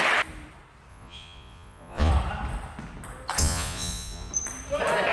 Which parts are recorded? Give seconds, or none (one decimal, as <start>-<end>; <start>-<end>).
0.0-0.9; 2.1-3.4; 4.3-5.1